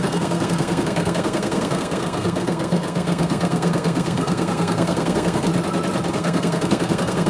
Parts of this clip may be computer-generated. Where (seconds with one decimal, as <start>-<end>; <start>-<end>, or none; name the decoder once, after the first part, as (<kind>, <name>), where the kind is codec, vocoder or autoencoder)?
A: 0.0-5.5 (codec, SNAC); 6.1-7.3